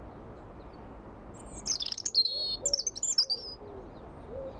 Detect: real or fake real